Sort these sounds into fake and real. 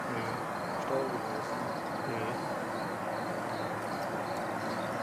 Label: real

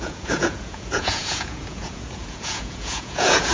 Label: fake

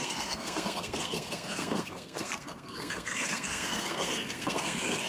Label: fake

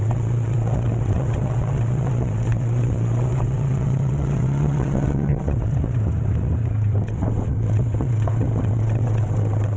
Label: fake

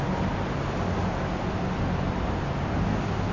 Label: real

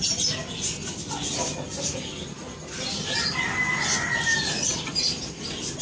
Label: real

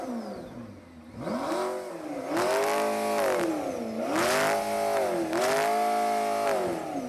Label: real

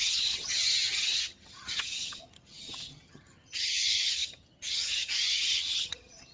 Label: fake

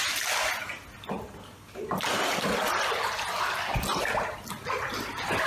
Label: real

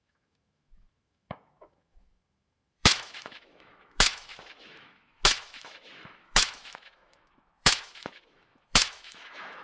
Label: fake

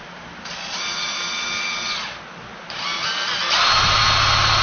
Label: real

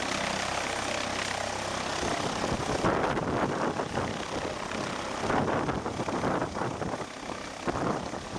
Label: real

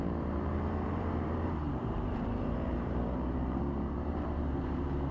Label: fake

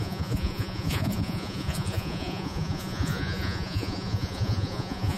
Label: fake